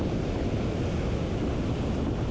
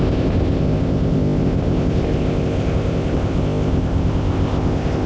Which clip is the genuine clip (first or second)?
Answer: first